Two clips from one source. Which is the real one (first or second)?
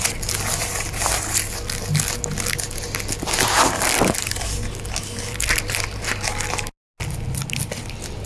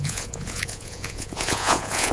first